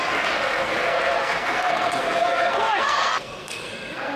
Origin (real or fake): fake